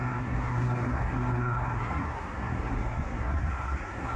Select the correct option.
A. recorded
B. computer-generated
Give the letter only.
B